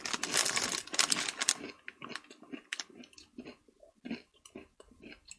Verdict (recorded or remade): recorded